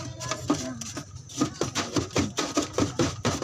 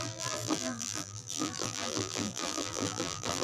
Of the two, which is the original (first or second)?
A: first